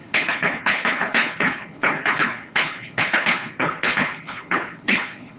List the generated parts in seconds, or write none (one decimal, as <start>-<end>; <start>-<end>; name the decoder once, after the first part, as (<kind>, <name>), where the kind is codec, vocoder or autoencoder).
0.0-5.4 (codec, HILCodec)